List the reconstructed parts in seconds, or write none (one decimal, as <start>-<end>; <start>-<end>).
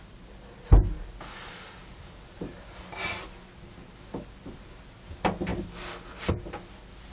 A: none